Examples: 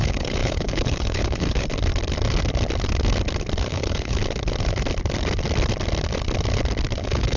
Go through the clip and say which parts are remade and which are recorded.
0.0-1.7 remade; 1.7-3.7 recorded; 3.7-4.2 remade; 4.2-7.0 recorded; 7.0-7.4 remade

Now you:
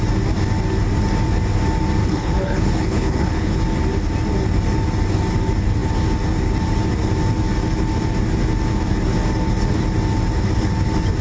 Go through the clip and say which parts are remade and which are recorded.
0.0-2.0 recorded; 2.0-3.6 remade; 3.6-11.2 recorded